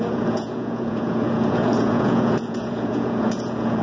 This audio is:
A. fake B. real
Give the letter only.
A